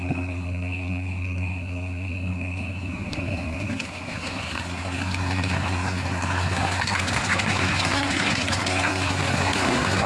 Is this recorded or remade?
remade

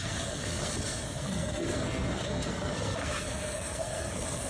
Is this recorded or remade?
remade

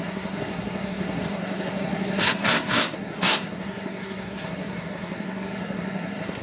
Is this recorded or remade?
remade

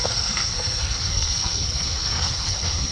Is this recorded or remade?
remade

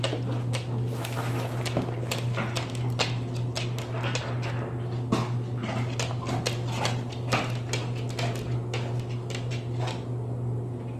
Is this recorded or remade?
recorded